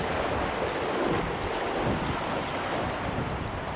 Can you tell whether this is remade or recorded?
recorded